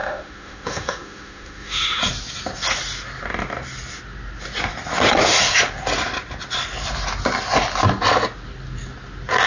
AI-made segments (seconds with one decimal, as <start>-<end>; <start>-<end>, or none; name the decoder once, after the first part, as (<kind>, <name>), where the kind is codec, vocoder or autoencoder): 0.0-2.0 (autoencoder, DAC-VAE)